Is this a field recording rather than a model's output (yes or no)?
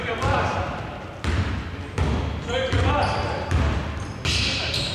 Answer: yes